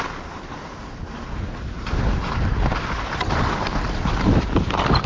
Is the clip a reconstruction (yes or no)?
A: no